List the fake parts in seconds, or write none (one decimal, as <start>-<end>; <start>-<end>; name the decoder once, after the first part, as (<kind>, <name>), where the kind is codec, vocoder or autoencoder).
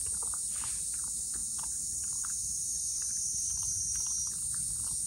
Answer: 1.4-4.0 (vocoder, BigVGAN v2)